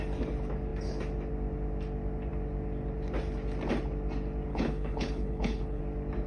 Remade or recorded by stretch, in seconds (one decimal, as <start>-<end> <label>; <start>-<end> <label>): 0.0-4.5 recorded; 4.5-5.8 remade; 5.8-6.3 recorded